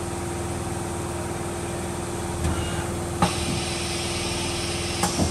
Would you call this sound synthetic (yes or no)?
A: no